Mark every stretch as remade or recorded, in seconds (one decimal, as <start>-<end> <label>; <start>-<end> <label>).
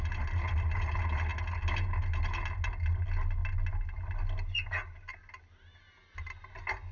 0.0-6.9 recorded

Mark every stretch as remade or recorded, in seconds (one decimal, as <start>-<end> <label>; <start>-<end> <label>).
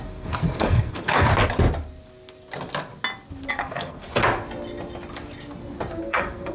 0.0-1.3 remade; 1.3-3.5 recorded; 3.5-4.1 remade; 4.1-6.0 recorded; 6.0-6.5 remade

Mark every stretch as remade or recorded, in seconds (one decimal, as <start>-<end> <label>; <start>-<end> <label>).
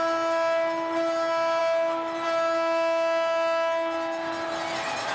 0.0-5.1 recorded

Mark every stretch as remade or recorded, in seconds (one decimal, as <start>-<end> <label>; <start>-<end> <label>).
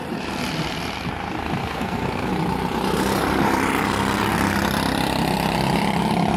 0.0-1.6 recorded; 1.6-2.3 remade; 2.3-6.4 recorded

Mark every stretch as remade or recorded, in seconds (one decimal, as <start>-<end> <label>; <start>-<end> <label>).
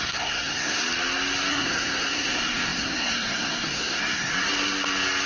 0.0-0.8 remade; 0.8-1.5 recorded; 1.5-4.3 remade; 4.3-5.3 recorded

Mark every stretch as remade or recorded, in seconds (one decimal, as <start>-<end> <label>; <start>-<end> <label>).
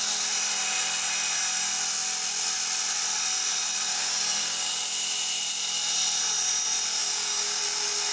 0.0-3.9 recorded; 3.9-4.7 remade; 4.7-7.0 recorded; 7.0-7.6 remade; 7.6-8.1 recorded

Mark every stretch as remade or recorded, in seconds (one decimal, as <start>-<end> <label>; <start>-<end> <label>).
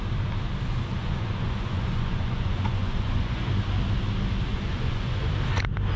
0.0-1.0 recorded; 1.0-3.5 remade; 3.5-4.5 recorded; 4.5-5.3 remade; 5.3-6.0 recorded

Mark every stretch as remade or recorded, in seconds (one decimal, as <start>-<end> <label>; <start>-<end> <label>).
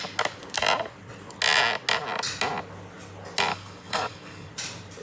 0.0-3.5 recorded; 3.5-4.5 remade; 4.5-5.0 recorded